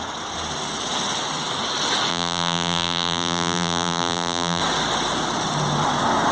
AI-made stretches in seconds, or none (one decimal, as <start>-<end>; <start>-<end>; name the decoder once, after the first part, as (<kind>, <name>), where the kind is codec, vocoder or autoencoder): 2.1-4.6 (vocoder, BigVGAN v2)